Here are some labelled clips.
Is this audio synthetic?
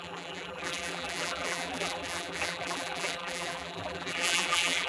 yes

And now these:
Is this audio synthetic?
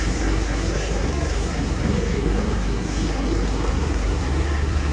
yes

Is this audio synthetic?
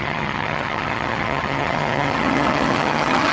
yes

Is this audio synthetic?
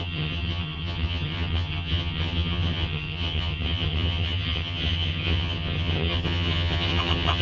yes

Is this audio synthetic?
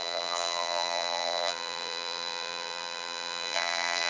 yes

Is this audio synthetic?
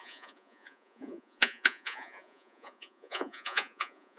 yes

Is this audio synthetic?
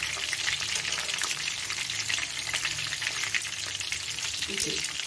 no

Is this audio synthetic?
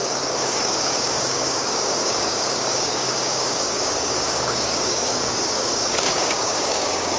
yes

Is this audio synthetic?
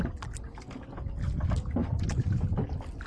no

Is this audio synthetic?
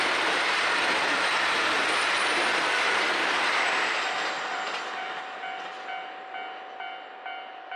no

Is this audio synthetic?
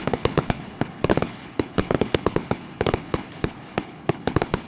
yes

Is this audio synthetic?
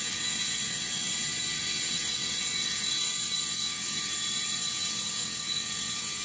yes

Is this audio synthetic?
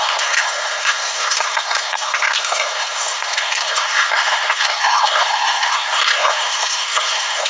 yes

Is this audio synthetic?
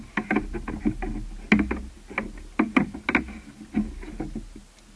no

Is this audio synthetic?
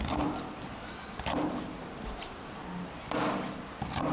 yes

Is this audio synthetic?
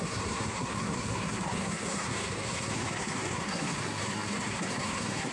yes